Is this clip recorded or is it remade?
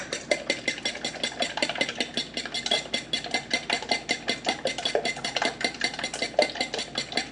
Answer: recorded